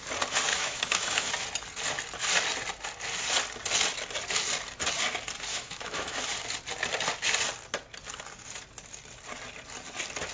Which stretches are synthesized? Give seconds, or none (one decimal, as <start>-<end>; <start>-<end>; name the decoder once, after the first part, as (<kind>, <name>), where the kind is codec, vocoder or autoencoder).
0.5-1.3 (autoencoder, DAC-VAE); 5.5-6.3

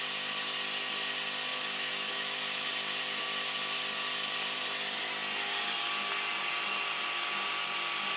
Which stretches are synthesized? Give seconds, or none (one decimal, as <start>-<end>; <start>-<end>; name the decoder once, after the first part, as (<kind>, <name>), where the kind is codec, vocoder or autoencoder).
1.5-2.7 (autoencoder, DAC-VAE)